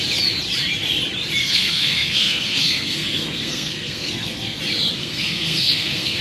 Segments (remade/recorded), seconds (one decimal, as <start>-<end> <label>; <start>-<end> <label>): 0.0-1.4 recorded; 1.4-4.6 remade; 4.6-5.0 recorded; 5.0-6.2 remade